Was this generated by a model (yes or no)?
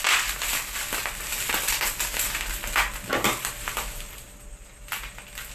no